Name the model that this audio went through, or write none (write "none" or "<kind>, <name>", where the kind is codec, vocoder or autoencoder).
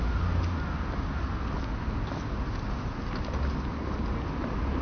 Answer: none